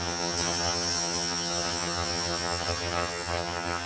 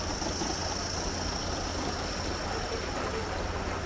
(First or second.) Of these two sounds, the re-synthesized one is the first